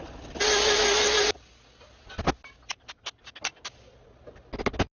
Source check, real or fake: real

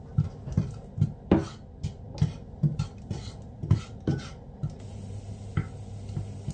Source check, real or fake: real